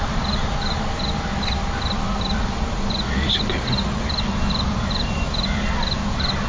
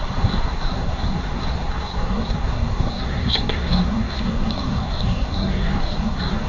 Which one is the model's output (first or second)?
second